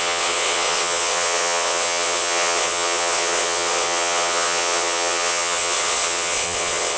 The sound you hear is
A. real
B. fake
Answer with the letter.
B